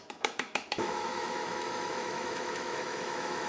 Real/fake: fake